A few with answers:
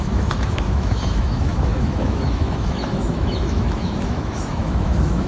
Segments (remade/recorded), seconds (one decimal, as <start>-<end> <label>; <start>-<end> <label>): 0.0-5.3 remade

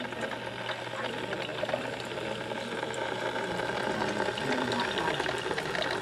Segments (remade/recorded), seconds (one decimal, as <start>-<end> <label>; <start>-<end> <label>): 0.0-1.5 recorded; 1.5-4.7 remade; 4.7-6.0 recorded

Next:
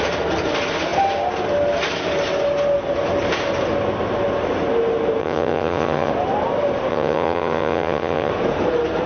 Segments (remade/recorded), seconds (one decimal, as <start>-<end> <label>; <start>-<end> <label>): 0.0-5.2 recorded; 5.2-6.1 remade; 6.1-6.9 recorded; 6.9-8.3 remade; 8.3-9.1 recorded

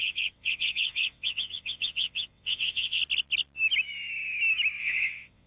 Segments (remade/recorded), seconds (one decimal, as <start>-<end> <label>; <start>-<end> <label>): 0.0-3.0 remade; 3.0-4.8 recorded; 4.8-5.5 remade

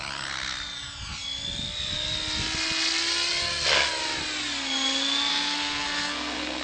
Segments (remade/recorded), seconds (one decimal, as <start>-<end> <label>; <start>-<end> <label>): 0.0-5.3 recorded; 5.3-6.6 remade

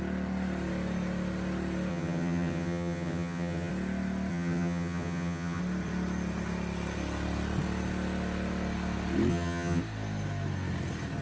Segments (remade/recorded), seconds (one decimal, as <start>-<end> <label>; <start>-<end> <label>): 0.0-1.9 recorded; 1.9-3.7 remade; 3.7-4.3 recorded; 4.3-5.6 remade; 5.6-9.3 recorded; 9.3-9.8 remade; 9.8-11.2 recorded

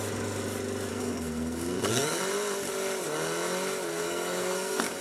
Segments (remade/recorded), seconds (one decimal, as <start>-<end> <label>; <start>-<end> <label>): 0.0-0.9 recorded; 0.9-2.2 remade; 2.2-3.9 recorded; 3.9-5.0 remade